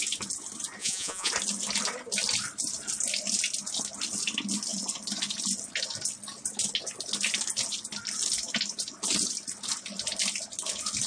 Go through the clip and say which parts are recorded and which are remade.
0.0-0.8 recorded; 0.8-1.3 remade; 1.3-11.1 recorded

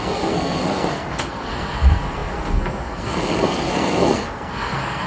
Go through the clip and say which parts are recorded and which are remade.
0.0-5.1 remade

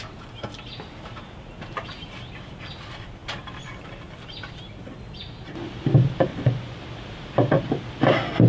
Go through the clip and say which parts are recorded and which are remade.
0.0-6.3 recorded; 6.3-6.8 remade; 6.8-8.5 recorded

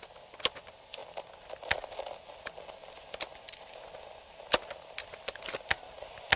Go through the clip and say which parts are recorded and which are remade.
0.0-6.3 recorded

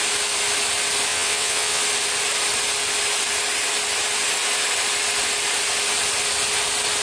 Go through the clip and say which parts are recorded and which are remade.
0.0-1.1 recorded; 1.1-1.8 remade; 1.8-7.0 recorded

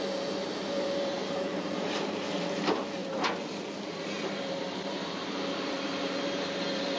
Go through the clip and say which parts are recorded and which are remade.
0.0-3.0 remade; 3.0-4.2 recorded; 4.2-7.0 remade

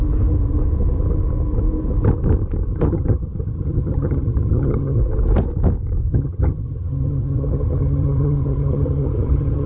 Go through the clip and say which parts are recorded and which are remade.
0.0-2.7 recorded; 2.7-5.0 remade; 5.0-6.1 recorded; 6.1-9.7 remade

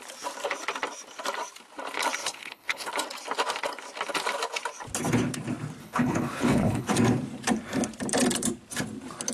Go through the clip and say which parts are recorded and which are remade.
0.0-2.2 recorded; 2.2-2.9 remade; 2.9-5.8 recorded; 5.8-6.9 remade; 6.9-9.3 recorded